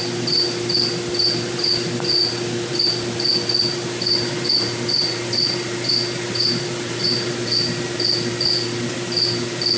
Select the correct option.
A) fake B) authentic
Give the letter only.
B